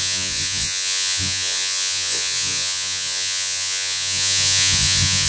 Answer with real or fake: fake